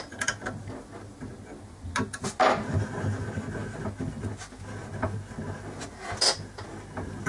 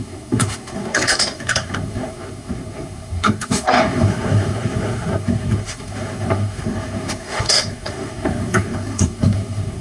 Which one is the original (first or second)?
first